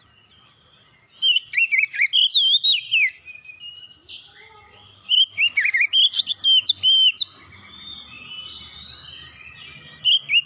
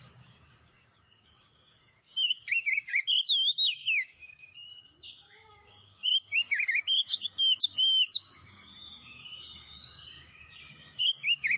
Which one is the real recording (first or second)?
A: first